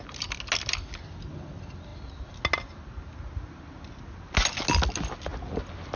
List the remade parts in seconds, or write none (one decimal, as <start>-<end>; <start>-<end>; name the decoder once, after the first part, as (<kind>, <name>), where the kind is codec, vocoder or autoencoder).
none